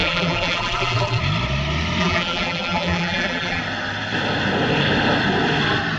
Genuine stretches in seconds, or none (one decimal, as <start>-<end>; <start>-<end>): 1.2-2.0; 3.6-6.0